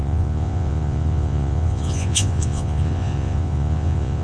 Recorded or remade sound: remade